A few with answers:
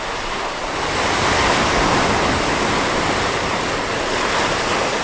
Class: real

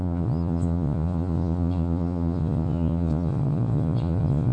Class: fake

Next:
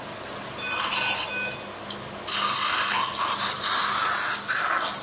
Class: real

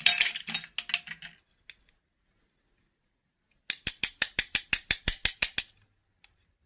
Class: real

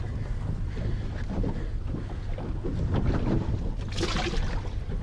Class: real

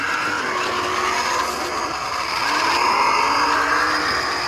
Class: real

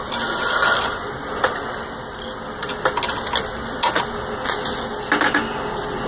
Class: real